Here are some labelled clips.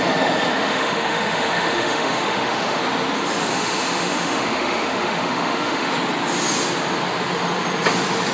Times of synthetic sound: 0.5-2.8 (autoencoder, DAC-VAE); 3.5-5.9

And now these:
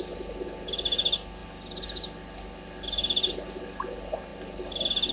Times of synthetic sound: none

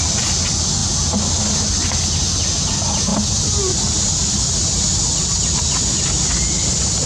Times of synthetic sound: none

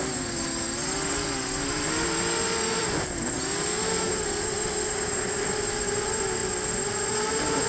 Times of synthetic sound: none

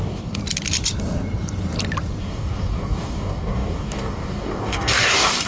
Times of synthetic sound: 0.0-0.4 (codec, DAC); 2.2-5.5

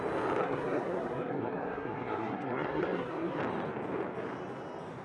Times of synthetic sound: 0.4-3.4 (codec, SNAC)

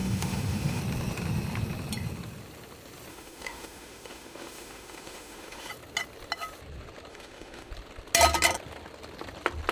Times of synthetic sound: 0.0-0.8 (autoencoder, DAC-VAE); 3.1-5.7; 7.1-7.7

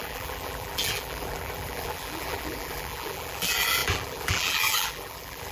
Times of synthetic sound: 0.0-5.5 (vocoder, BigVGAN v2)